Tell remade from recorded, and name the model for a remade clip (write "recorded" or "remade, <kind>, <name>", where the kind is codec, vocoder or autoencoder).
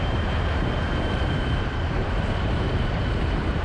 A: remade, vocoder, BigVGAN v2